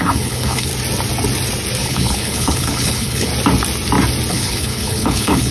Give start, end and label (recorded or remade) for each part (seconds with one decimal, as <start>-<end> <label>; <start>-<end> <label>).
0.0-0.7 remade; 0.7-1.8 recorded; 1.8-3.3 remade; 3.3-4.3 recorded; 4.3-5.5 remade